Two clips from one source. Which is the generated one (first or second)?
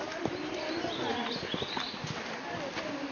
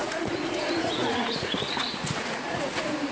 second